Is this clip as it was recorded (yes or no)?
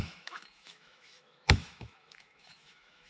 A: no